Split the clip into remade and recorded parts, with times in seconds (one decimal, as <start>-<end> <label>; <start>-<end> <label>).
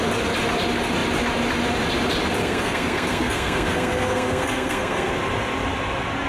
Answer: 0.0-2.4 recorded; 2.4-5.1 remade; 5.1-6.3 recorded